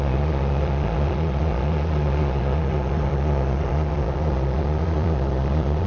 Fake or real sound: fake